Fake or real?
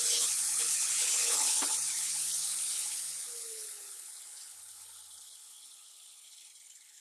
fake